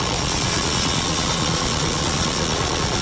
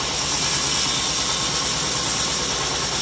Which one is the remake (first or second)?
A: first